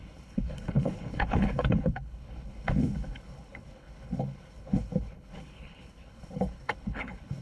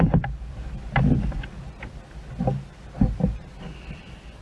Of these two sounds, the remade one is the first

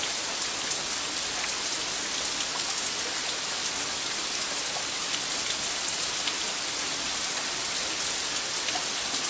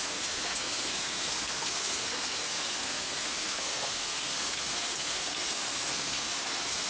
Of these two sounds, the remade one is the second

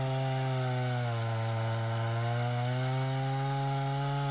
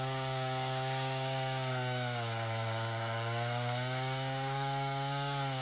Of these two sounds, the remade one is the second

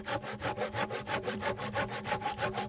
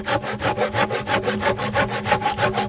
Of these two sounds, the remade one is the first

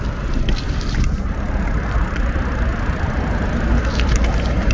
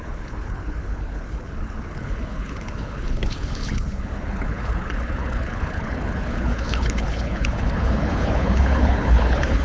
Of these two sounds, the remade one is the second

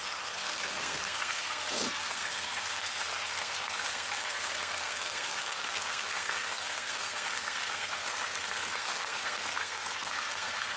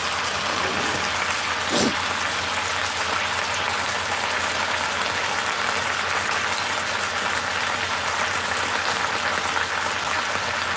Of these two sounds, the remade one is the first